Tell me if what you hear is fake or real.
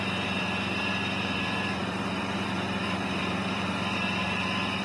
fake